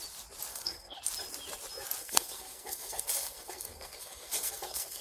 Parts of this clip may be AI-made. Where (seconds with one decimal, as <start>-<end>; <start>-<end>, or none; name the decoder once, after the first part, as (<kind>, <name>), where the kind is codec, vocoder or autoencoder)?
0.5-1.0 (codec, SNAC); 2.0-5.0